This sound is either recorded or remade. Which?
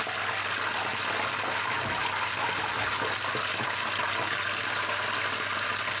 recorded